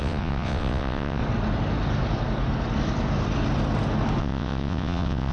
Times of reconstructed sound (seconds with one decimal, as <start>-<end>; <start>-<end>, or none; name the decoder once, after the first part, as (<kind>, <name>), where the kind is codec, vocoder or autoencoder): 0.0-1.2 (vocoder, WaveNeXt); 4.2-5.3